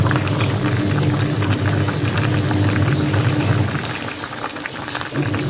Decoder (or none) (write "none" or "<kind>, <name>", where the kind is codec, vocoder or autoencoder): none